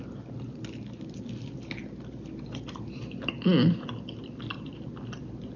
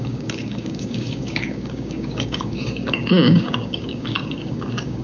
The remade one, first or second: second